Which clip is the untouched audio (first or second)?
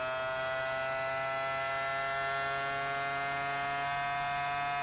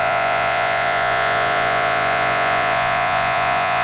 first